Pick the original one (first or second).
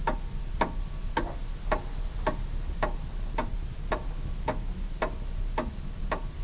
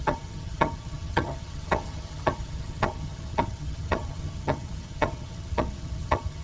first